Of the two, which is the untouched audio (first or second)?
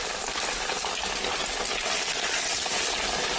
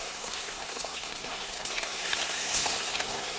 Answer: first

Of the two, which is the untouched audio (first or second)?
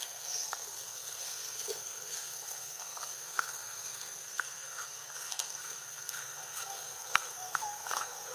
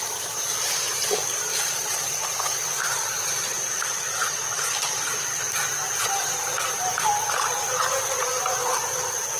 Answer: second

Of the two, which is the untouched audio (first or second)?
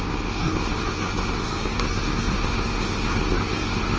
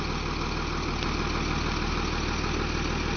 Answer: second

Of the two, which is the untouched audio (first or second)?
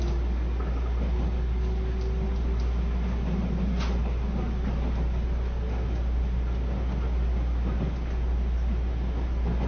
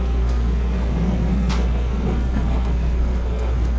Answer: first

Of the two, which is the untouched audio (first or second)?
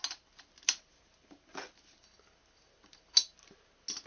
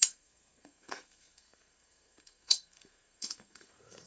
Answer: first